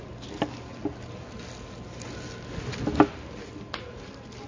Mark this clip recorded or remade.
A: recorded